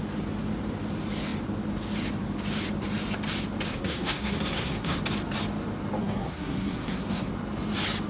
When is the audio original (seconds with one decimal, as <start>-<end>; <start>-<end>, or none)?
0.0-3.7; 5.0-6.0; 7.3-8.1

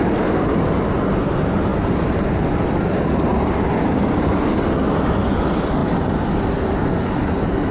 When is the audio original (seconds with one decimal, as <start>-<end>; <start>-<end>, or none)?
0.0-7.7

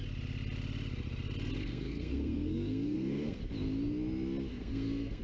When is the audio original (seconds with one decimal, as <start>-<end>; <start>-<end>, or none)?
0.0-1.6; 3.4-4.5

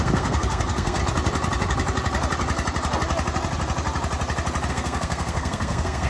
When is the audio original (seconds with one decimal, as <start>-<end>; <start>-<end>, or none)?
1.0-4.7

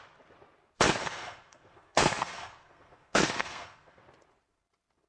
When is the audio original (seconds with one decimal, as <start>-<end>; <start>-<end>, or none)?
0.0-1.0; 4.0-5.1